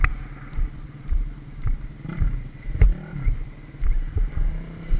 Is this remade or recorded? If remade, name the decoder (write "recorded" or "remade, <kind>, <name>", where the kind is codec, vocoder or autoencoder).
remade, vocoder, BigVGAN v2